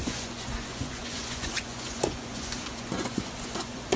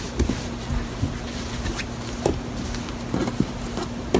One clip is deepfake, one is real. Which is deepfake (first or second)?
first